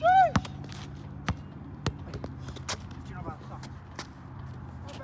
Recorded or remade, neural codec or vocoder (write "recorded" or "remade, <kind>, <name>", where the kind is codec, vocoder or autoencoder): recorded